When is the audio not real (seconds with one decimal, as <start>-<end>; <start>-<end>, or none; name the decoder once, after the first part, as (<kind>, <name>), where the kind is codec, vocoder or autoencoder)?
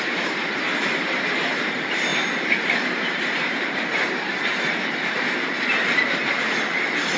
0.0-7.2 (vocoder, BigVGAN v2)